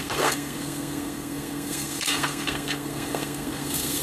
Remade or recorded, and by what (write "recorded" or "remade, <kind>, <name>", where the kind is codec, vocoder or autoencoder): remade, codec, SNAC